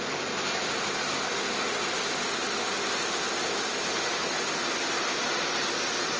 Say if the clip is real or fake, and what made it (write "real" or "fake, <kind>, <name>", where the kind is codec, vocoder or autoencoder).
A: real